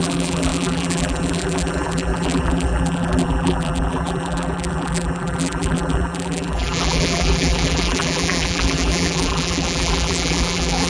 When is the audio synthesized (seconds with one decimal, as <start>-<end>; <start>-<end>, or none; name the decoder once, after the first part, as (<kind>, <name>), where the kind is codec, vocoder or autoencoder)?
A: 0.0-10.9 (vocoder, BigVGAN v2)